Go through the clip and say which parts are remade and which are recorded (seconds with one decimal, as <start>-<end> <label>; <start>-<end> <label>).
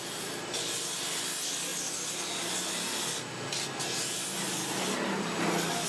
0.0-5.9 recorded